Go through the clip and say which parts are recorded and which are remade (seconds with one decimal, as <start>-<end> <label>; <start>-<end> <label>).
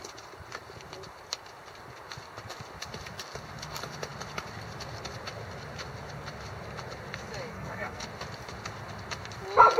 0.0-7.5 recorded; 7.5-8.0 remade; 8.0-9.8 recorded